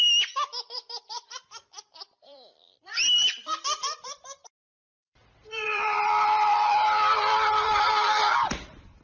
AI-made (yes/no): yes